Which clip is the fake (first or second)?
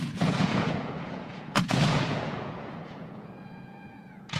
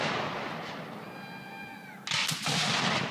first